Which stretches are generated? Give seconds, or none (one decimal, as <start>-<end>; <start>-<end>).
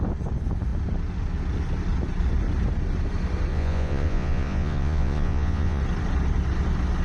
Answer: 3.5-5.8